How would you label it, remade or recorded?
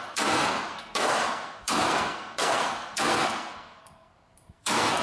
remade